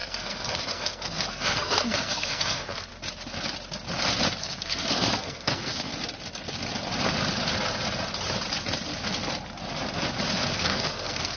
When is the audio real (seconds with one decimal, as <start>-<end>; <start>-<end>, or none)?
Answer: 2.9-4.4; 5.9-10.5